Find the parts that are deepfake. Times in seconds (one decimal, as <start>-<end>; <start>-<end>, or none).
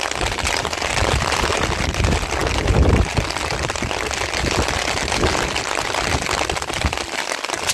none